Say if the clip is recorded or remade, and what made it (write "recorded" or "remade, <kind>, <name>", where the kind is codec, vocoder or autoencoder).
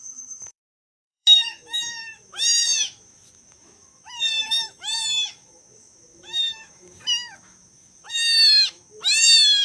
remade, autoencoder, DAC-VAE